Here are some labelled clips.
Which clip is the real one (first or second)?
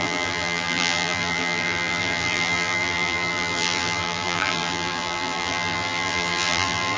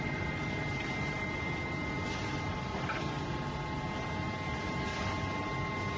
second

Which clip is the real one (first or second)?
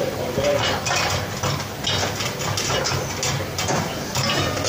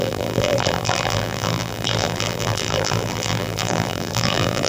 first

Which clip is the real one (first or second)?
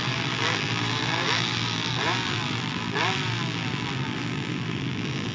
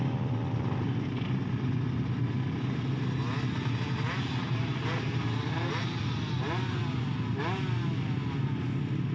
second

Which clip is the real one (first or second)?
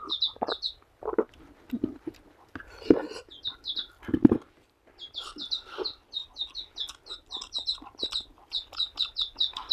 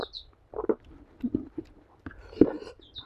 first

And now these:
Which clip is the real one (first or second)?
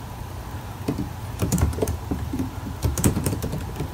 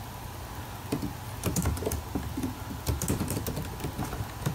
second